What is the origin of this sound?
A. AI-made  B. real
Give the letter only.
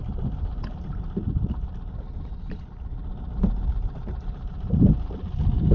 B